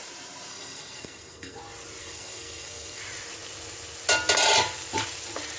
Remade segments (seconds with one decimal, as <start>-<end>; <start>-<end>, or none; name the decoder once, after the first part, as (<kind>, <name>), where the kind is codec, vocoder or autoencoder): 0.5-1.6 (codec, SNAC); 2.0-3.0